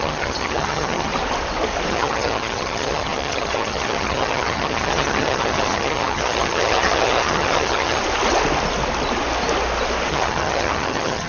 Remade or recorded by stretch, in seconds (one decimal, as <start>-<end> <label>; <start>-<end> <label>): 0.0-1.1 remade; 1.1-1.9 recorded; 1.9-8.0 remade; 8.0-10.1 recorded; 10.1-11.3 remade